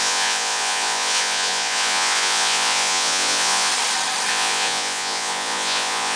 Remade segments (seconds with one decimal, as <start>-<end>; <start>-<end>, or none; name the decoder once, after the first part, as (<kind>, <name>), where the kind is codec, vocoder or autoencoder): 0.0-3.7 (vocoder, Vocos); 4.3-6.2